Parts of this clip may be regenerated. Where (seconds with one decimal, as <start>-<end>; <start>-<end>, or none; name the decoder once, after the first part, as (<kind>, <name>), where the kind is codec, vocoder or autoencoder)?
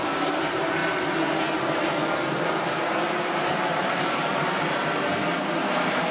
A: 0.0-0.8 (vocoder, BigVGAN v2); 1.4-6.1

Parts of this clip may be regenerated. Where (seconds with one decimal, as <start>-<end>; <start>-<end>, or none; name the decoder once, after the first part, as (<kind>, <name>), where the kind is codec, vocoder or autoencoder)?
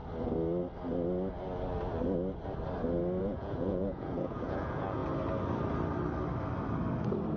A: 3.2-5.0 (vocoder, Vocos)